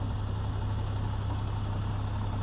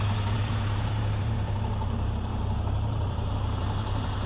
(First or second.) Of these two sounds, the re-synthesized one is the second